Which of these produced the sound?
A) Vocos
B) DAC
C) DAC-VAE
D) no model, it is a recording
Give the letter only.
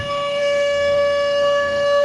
C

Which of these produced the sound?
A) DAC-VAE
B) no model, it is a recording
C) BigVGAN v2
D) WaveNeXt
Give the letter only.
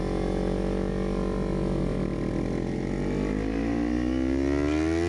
B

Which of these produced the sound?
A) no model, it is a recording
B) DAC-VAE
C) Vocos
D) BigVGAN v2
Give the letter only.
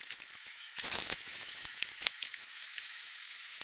B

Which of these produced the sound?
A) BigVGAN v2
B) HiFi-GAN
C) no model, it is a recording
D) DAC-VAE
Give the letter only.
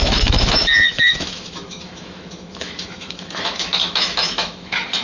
D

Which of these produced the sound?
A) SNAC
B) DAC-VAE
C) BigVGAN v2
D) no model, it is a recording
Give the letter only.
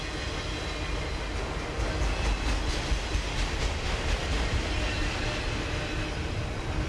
D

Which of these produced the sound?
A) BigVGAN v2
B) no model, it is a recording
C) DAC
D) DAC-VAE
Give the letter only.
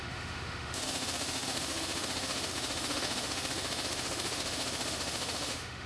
D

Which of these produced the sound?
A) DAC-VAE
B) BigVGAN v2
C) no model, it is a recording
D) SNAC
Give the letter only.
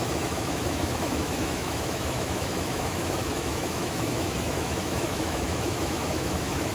A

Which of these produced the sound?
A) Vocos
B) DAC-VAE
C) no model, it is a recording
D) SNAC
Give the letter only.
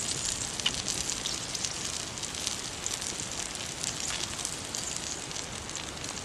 C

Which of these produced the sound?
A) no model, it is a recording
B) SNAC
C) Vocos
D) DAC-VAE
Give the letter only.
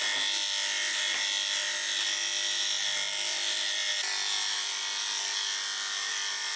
A